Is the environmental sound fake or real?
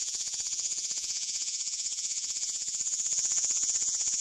fake